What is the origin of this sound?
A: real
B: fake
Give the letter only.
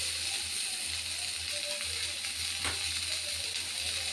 A